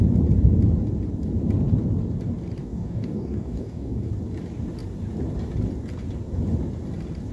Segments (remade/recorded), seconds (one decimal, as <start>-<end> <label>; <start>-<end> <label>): 0.0-2.6 recorded; 2.6-4.1 remade; 4.1-7.3 recorded